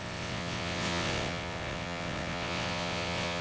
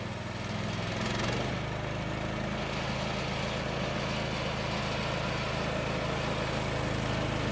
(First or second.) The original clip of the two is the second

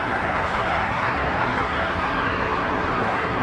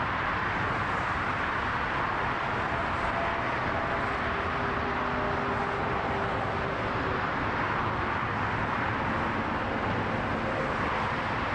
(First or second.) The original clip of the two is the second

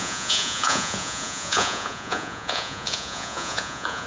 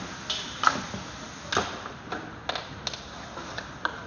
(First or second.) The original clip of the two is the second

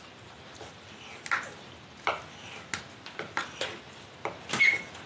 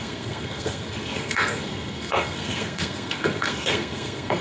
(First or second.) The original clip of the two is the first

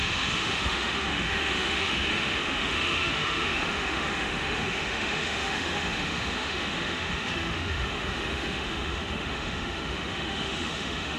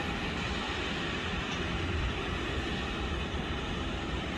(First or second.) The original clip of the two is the second